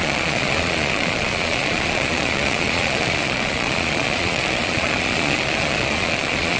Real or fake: fake